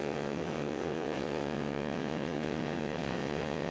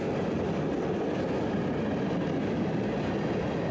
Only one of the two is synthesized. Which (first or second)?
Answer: first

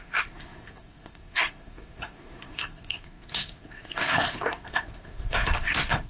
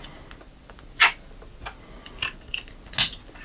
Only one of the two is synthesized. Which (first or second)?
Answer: first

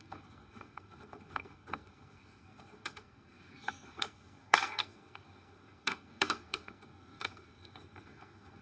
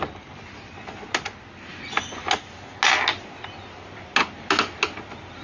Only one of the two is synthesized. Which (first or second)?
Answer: first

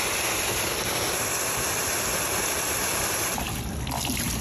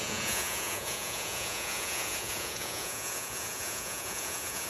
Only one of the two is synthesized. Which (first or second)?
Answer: second